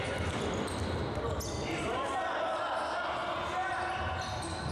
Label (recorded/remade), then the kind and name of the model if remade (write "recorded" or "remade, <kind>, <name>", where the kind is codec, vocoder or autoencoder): recorded